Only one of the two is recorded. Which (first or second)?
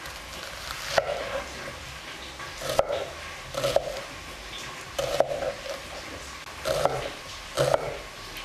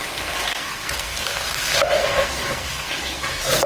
first